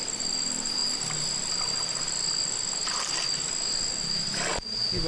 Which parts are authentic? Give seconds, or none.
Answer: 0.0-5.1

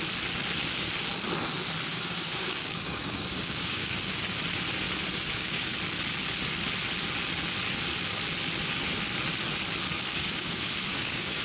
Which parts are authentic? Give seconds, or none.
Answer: 0.0-1.9; 4.4-5.1; 5.7-10.1

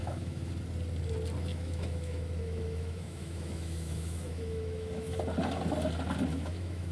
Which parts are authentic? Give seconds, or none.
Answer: 0.5-1.5; 5.2-6.3